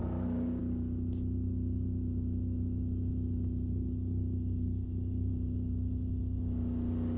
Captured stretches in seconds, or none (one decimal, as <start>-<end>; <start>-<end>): 0.6-3.7; 5.3-7.2